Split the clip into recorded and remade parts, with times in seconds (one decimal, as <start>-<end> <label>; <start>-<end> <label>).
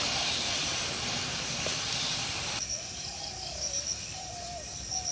0.0-5.1 remade